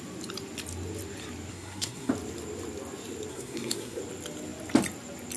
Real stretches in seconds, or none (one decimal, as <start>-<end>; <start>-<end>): 0.0-1.5; 2.1-3.3; 4.0-5.4